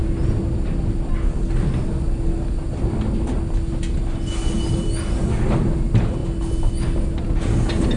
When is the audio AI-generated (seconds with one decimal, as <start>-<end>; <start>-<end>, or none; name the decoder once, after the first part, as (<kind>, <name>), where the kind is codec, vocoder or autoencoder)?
none